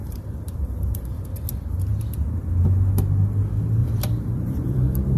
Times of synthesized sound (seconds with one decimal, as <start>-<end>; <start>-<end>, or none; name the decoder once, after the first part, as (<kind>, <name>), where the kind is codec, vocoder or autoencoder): 0.0-1.2 (vocoder, BigVGAN v2); 3.8-5.2